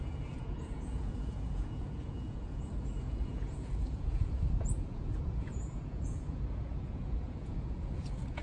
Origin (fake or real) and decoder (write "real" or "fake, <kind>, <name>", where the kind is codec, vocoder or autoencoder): fake, vocoder, Vocos